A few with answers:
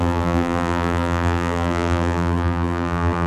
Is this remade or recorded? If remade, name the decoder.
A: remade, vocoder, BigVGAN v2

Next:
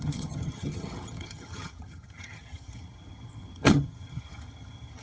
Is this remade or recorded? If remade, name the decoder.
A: remade, vocoder, HiFi-GAN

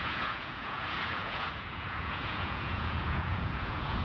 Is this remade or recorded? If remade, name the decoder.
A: remade, vocoder, Vocos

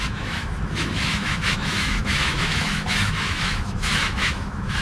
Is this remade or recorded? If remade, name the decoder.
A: remade, autoencoder, DAC-VAE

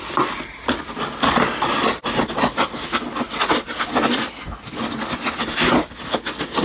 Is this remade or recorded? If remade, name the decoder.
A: recorded